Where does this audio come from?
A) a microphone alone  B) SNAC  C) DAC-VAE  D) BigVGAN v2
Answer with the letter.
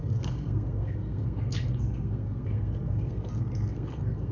B